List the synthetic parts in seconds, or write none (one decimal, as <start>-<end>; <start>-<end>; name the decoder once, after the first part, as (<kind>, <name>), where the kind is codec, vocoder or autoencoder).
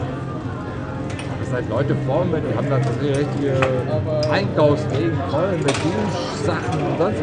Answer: none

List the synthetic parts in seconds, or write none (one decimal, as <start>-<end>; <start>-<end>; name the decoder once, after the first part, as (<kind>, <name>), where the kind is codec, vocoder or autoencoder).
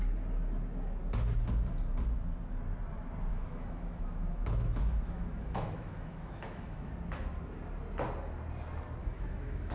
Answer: 3.3-6.9 (autoencoder, DAC-VAE); 9.0-9.7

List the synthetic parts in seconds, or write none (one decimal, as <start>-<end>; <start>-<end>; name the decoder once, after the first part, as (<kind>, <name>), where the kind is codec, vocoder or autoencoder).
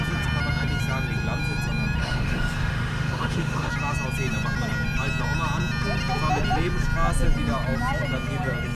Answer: 2.0-3.7 (autoencoder, DAC-VAE)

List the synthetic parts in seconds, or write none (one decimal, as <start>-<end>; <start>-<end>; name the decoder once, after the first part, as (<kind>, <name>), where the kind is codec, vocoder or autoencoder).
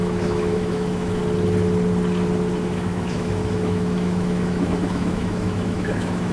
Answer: 0.0-1.2 (autoencoder, DAC-VAE); 2.5-6.3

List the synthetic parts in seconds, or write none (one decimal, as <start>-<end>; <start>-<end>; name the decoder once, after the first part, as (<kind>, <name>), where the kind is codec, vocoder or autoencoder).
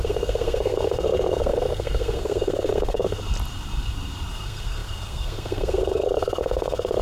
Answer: 0.0-3.2 (codec, SNAC); 4.3-7.0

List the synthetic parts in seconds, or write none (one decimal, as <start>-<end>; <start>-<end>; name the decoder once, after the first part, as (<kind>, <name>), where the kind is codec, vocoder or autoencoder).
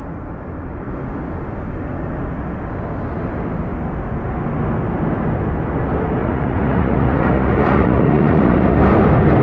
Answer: 6.2-8.8 (vocoder, Vocos)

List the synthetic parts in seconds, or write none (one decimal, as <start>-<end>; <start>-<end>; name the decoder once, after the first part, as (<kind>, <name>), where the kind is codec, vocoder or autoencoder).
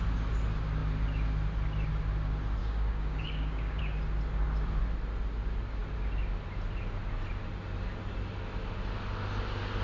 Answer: 2.6-3.8 (codec, DAC)